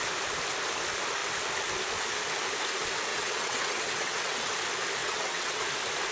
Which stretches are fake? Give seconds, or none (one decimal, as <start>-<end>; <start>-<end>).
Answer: 3.1-4.5; 5.0-5.6